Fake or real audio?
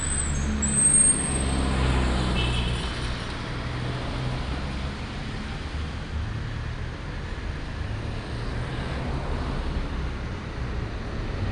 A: real